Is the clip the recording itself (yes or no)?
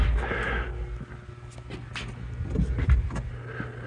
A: yes